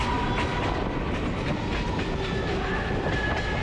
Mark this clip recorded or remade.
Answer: recorded